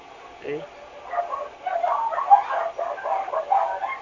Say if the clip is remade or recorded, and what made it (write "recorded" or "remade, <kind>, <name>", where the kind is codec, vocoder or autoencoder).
recorded